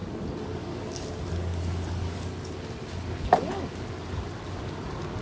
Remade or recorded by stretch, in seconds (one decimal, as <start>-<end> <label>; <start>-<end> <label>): 0.0-5.2 remade